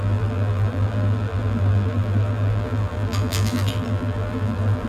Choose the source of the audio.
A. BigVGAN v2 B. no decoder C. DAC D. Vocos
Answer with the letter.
A